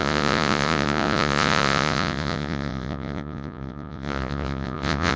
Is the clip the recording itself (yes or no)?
no